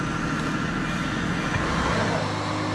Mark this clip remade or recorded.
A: recorded